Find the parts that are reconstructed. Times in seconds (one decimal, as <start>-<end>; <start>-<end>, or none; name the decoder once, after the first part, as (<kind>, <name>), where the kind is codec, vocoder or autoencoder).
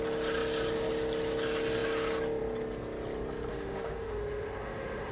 3.5-5.1 (autoencoder, DAC-VAE)